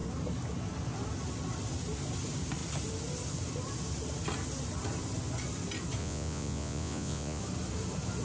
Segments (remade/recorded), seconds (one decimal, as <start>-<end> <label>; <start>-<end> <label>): 0.0-6.0 recorded; 6.0-7.4 remade; 7.4-8.2 recorded